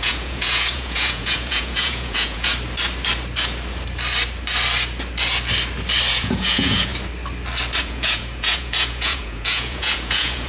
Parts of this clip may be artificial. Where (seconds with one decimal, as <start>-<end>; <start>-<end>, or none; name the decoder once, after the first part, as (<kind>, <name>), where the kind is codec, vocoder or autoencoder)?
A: 0.0-2.5 (vocoder, Vocos); 6.1-6.9; 7.8-10.5